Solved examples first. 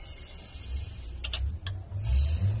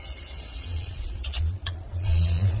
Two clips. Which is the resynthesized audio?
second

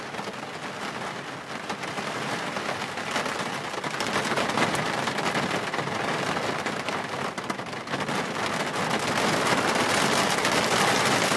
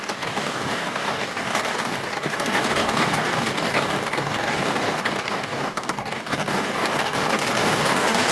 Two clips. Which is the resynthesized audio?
second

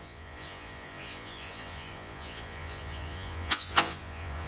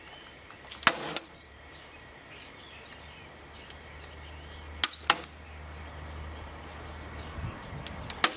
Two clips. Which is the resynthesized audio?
first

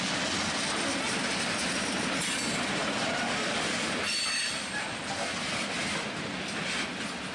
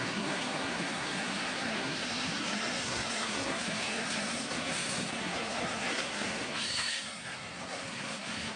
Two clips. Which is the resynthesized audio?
second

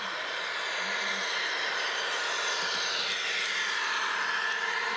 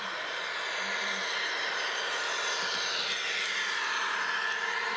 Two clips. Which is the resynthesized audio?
first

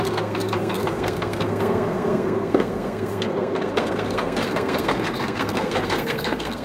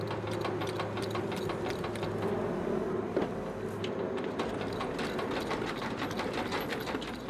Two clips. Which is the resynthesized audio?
first